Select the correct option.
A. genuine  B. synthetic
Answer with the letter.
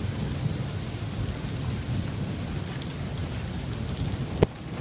A